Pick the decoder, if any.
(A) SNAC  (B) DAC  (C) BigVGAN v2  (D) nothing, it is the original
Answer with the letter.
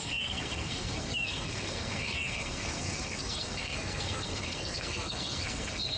A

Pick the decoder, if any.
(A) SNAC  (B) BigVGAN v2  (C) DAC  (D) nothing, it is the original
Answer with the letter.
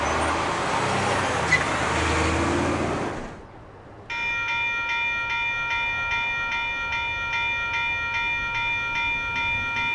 D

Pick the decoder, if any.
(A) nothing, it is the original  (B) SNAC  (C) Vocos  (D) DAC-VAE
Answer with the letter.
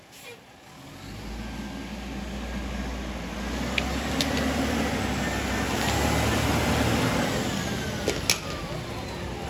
A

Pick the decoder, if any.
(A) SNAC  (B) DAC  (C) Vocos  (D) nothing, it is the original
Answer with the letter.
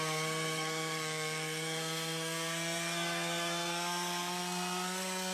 A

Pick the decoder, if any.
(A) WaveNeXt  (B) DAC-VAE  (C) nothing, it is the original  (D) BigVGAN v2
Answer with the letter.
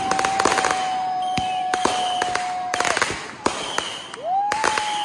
C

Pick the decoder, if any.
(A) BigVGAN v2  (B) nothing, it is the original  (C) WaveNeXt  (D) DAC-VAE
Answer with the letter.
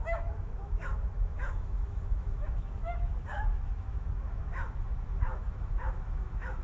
D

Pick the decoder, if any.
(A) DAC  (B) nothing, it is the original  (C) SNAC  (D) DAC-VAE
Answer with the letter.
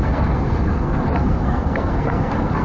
C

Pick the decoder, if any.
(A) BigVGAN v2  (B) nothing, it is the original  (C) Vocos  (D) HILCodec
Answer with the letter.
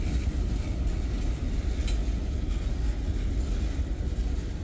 B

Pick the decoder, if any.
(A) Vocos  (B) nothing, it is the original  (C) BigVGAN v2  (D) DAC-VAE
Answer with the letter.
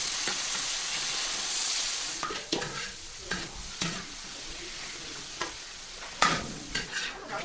A